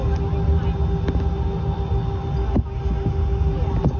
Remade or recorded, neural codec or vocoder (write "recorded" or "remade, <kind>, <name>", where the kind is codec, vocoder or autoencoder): recorded